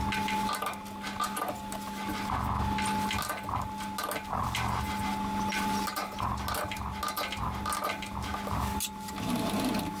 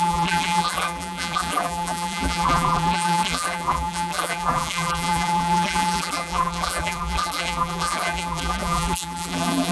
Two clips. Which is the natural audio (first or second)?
first